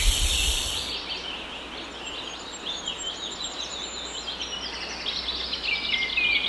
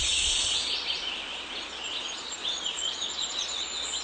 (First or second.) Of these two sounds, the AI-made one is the second